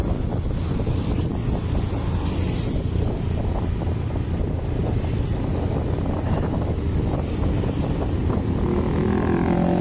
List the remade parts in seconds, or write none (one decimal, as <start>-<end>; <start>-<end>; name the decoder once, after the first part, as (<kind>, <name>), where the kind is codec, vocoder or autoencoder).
none